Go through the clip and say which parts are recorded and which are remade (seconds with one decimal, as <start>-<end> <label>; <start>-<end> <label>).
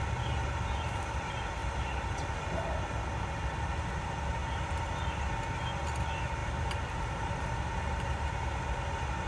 0.0-6.4 recorded; 6.4-8.0 remade; 8.0-9.3 recorded